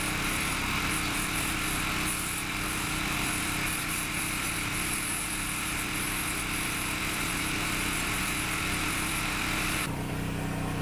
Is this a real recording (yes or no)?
no